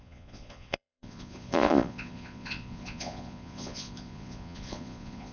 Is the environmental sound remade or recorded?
remade